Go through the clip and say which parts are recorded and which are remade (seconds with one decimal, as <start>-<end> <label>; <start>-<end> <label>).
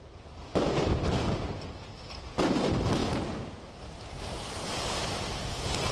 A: 0.0-5.9 recorded